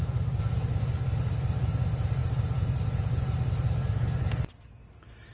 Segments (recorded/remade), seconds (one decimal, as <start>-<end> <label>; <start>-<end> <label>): 0.0-5.3 recorded

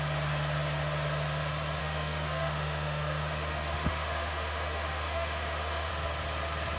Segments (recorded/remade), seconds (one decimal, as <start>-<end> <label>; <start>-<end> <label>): 0.0-1.8 recorded; 1.8-5.9 remade; 5.9-6.8 recorded

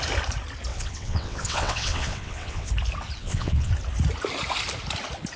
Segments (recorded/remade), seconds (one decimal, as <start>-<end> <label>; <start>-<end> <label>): 0.0-0.7 recorded; 0.7-2.7 remade; 2.7-3.2 recorded; 3.2-3.7 remade; 3.7-5.4 recorded

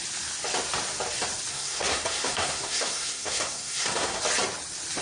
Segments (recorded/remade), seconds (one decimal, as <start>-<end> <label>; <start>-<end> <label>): 0.0-1.5 recorded; 1.5-4.2 remade; 4.2-5.0 recorded

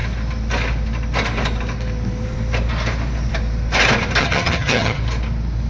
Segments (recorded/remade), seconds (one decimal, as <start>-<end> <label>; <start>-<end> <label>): 0.0-4.2 recorded; 4.2-5.0 remade; 5.0-5.7 recorded

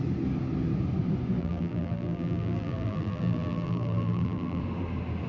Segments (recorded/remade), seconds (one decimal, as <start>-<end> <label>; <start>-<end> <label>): 0.0-1.4 recorded; 1.4-4.6 remade; 4.6-5.3 recorded

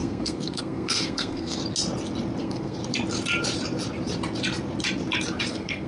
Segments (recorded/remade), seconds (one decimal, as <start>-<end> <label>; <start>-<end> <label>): 0.0-1.6 remade; 1.6-2.4 recorded; 2.4-2.8 remade; 2.8-5.5 recorded; 5.5-5.9 remade

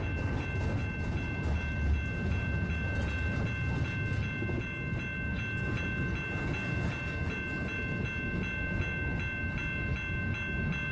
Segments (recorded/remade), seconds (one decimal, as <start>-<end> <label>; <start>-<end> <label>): 0.0-10.9 recorded